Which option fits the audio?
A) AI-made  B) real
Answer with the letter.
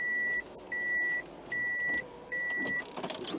B